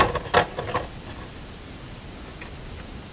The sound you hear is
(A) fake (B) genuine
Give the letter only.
B